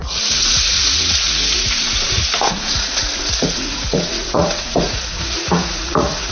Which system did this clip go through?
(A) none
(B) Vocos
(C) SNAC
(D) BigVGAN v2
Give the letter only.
B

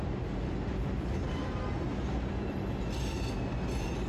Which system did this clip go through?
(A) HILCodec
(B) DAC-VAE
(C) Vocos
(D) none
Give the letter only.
D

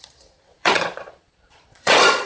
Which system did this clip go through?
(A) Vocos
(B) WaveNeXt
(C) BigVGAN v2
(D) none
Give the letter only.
A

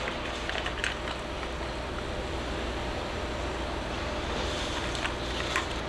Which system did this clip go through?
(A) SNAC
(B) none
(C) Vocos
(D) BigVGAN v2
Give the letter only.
B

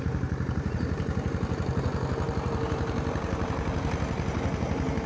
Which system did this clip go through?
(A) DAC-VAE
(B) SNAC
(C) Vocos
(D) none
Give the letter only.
D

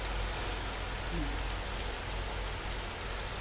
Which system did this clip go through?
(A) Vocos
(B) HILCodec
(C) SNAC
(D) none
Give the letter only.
D